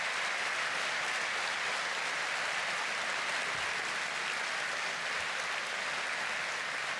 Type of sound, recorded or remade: recorded